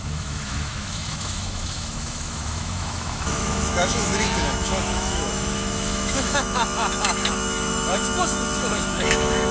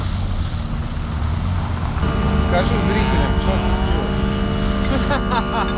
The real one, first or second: second